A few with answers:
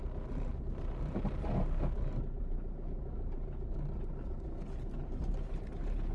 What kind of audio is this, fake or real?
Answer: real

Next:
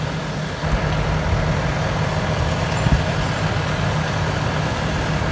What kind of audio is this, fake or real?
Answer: real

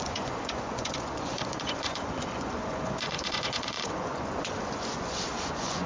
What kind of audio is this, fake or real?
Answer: fake